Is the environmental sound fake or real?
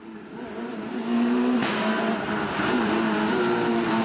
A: fake